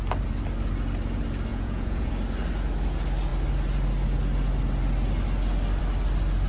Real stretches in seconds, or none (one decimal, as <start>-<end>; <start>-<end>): 0.0-1.5; 2.1-6.5